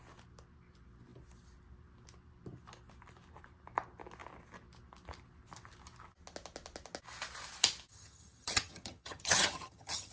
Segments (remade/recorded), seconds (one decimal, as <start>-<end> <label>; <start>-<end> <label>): 0.0-7.9 recorded; 7.9-10.1 remade